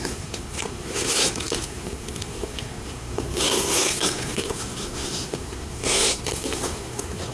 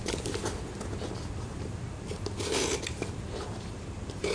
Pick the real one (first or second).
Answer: second